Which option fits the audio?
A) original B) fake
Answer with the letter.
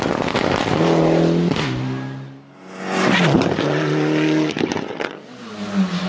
A